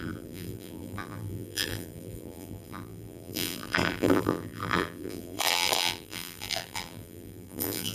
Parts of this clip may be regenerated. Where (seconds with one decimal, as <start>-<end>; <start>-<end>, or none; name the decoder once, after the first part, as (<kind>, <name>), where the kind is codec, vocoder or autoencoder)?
0.0-7.9 (vocoder, BigVGAN v2)